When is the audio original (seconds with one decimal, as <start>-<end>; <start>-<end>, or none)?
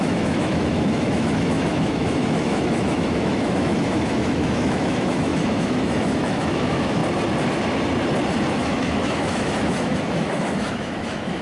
7.0-8.5